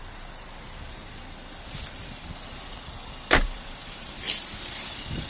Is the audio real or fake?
real